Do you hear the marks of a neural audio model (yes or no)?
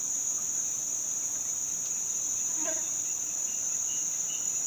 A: no